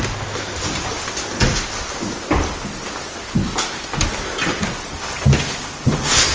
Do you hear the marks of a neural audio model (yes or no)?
no